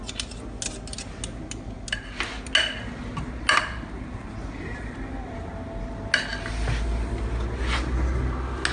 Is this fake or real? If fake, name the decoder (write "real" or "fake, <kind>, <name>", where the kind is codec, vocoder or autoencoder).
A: real